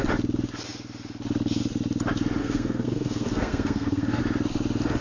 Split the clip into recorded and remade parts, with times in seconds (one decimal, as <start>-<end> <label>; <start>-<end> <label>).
0.0-2.4 recorded; 2.4-4.2 remade; 4.2-5.0 recorded